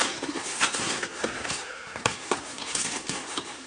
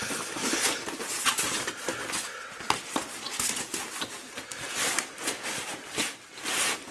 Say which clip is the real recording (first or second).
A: second